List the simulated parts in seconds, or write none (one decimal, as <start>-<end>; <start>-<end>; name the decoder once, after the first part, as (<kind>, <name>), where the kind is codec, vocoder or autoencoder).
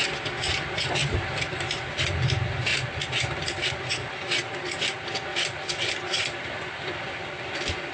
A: 1.0-1.9 (vocoder, BigVGAN v2); 5.3-7.3